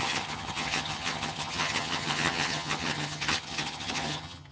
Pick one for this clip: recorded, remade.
remade